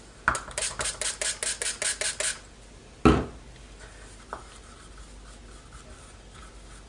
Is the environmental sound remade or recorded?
recorded